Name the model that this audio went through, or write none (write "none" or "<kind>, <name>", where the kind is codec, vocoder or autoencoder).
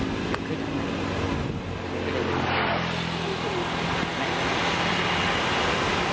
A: none